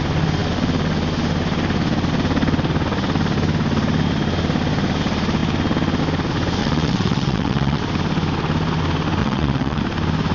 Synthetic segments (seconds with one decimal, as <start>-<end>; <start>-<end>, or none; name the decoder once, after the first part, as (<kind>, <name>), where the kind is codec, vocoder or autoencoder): 6.6-7.8 (vocoder, WaveNeXt); 9.2-9.8